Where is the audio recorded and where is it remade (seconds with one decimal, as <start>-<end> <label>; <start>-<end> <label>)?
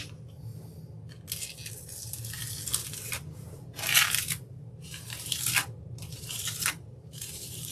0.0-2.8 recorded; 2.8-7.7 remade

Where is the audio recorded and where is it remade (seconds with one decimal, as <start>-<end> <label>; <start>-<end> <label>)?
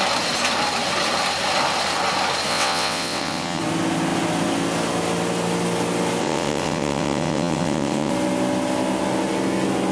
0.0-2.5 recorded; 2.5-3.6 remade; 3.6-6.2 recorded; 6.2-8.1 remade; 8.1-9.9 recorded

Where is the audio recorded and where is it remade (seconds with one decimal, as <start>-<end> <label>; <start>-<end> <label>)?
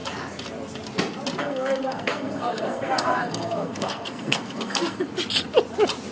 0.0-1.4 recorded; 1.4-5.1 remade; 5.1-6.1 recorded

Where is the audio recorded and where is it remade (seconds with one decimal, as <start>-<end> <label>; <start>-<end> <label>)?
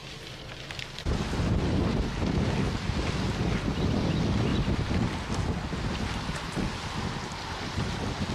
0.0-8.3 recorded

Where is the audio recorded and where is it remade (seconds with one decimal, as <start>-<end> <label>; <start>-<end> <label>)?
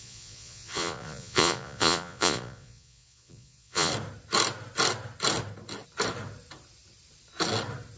0.0-3.9 remade; 3.9-8.0 recorded